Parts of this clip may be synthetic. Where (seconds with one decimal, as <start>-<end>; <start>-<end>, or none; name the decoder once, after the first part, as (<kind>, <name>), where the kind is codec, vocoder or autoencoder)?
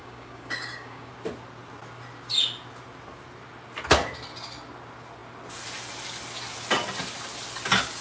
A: 0.0-1.1 (codec, DAC)